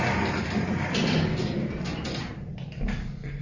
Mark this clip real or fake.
real